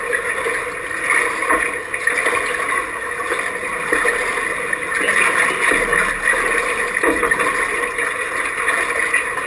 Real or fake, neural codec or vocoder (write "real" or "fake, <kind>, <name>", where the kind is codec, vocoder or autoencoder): real